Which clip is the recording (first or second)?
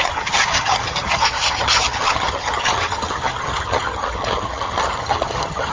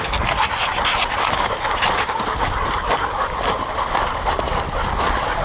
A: second